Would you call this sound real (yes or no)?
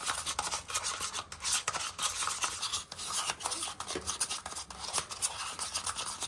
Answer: yes